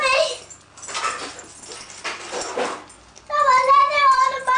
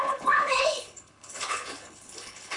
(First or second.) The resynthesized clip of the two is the second